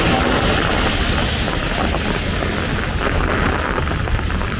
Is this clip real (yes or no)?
yes